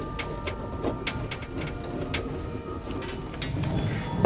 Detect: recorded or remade recorded